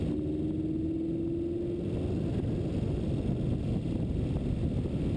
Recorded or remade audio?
recorded